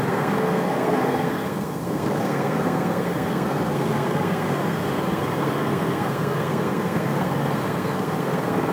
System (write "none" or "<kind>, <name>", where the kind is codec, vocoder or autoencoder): codec, SNAC